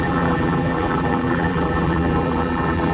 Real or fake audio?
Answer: fake